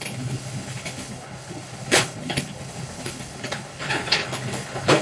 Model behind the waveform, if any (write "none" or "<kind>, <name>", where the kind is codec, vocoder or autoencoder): codec, HILCodec